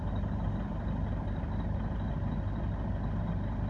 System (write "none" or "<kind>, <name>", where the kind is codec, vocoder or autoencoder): none